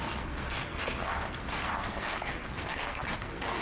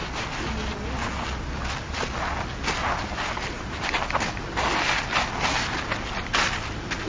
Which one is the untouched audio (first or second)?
second